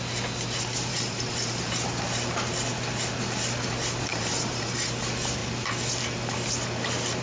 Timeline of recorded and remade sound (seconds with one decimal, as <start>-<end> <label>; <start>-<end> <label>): 0.0-0.9 recorded; 0.9-1.7 remade; 1.7-4.1 recorded; 4.1-4.9 remade; 4.9-7.2 recorded